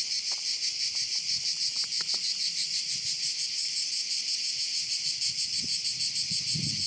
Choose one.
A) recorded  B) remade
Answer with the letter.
A